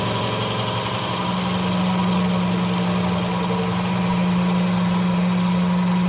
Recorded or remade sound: recorded